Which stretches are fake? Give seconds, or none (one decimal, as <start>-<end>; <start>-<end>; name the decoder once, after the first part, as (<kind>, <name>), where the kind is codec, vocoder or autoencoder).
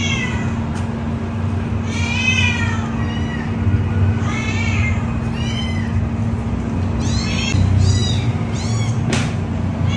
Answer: none